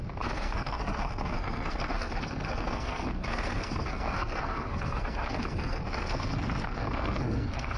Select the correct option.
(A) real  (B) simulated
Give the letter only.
B